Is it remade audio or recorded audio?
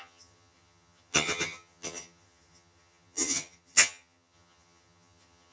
remade